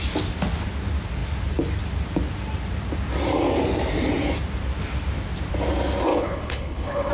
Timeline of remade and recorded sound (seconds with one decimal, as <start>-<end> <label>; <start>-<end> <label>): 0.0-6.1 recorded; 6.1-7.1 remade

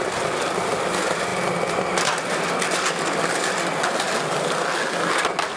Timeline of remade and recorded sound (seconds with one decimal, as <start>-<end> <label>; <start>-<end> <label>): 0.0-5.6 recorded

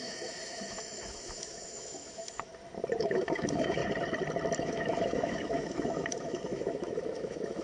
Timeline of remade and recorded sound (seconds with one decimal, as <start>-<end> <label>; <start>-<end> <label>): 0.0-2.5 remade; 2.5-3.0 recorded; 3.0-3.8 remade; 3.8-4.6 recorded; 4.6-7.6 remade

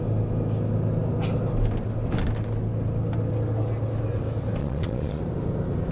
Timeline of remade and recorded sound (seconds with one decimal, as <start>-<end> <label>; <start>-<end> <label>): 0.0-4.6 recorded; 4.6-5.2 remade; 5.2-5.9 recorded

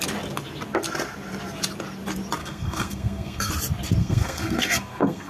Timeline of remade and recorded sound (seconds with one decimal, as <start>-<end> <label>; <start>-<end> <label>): 0.0-2.4 recorded; 2.4-3.5 remade; 3.5-4.0 recorded; 4.0-5.3 remade